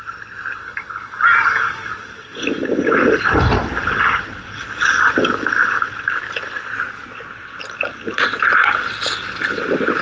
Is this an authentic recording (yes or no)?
yes